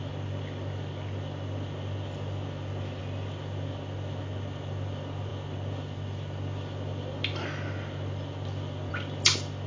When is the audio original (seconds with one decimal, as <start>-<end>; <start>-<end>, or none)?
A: 0.0-9.7